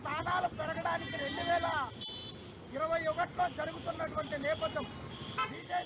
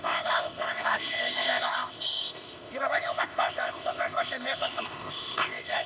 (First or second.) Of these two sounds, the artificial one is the second